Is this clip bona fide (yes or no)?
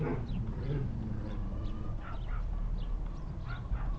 yes